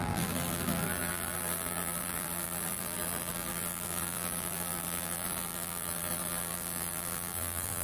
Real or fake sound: fake